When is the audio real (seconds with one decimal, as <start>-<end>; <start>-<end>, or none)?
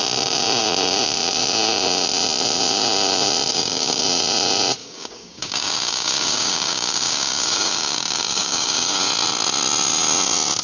0.0-3.5; 4.0-4.8; 9.0-10.6